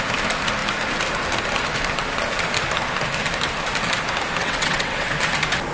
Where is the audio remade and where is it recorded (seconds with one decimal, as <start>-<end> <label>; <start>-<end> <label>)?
0.0-4.4 recorded; 4.4-5.1 remade; 5.1-5.7 recorded